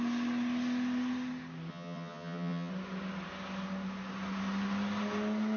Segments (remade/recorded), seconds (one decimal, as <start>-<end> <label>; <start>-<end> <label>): 0.0-1.7 recorded; 1.7-2.7 remade; 2.7-5.6 recorded